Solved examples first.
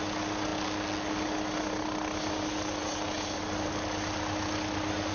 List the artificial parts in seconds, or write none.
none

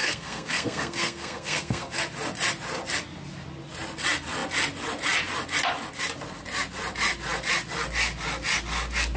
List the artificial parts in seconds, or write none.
0.0-2.0

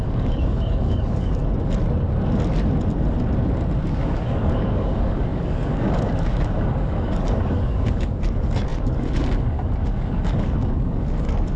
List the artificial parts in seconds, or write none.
0.0-1.4; 3.8-11.6

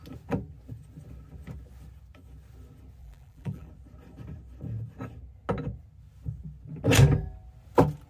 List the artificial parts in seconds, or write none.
3.0-3.7

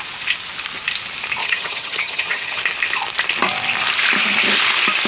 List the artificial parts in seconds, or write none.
1.4-2.6

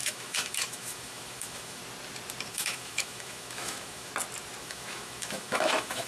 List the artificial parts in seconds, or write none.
0.0-1.8; 2.5-4.1; 4.6-6.1

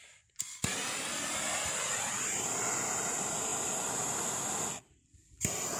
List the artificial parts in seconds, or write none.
none